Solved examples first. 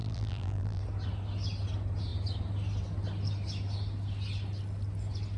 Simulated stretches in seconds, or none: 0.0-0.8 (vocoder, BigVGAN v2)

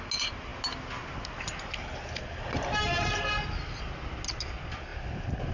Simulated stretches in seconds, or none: none

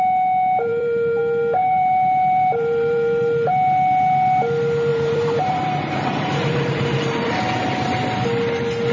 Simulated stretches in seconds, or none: 0.7-1.2 (vocoder, BigVGAN v2); 1.6-3.5; 4.9-7.4

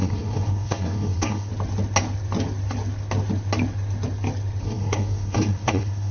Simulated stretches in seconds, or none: 0.0-1.5 (codec, SNAC); 4.6-6.1

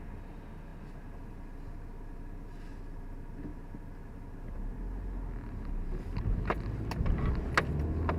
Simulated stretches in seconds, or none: none

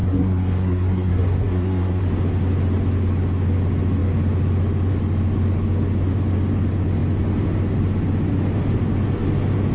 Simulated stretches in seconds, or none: 0.0-2.0 (codec, SNAC)

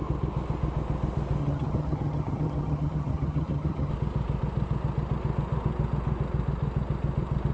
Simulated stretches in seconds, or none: 1.4-3.9 (vocoder, HiFi-GAN)